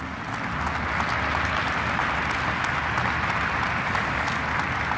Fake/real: real